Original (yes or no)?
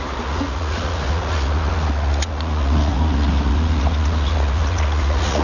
no